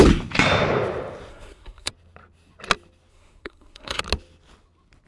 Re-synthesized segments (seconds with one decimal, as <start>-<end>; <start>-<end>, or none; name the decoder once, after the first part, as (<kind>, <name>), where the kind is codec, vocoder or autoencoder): 1.3-1.9 (codec, SNAC); 3.1-4.0